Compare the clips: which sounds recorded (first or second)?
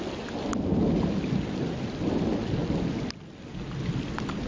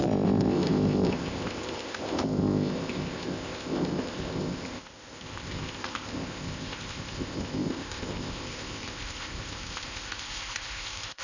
first